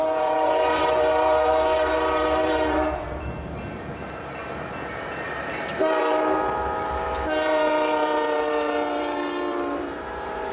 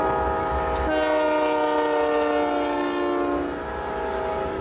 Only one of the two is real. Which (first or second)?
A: second